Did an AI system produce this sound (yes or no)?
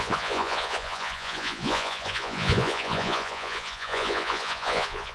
yes